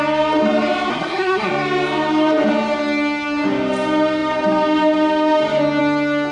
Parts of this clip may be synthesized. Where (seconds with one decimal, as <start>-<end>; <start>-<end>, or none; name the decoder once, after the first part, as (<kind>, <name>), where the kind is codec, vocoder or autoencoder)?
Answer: 0.9-1.5 (codec, SNAC)